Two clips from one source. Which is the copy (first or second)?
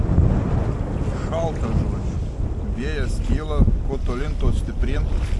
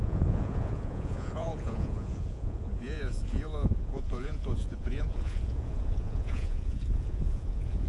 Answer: second